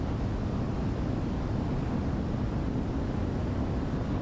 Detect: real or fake real